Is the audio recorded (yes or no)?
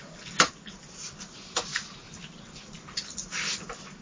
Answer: yes